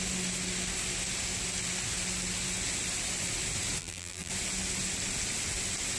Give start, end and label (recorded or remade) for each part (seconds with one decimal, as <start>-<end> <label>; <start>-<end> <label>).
0.0-3.8 recorded; 3.8-4.3 remade; 4.3-6.0 recorded